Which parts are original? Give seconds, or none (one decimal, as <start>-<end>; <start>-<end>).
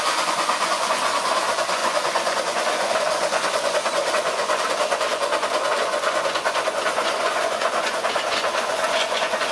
none